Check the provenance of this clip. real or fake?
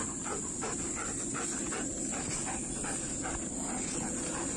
real